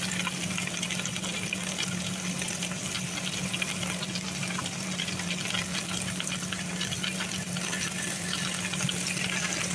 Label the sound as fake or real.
real